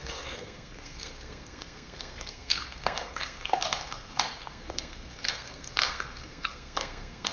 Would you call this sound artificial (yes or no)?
yes